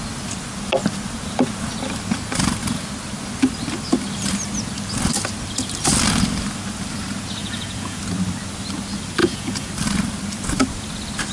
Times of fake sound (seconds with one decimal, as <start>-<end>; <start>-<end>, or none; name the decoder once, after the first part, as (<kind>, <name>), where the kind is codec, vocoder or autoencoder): 7.4-8.0 (vocoder, Vocos); 9.2-9.7